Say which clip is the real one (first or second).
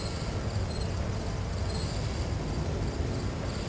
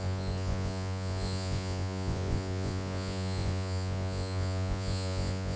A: first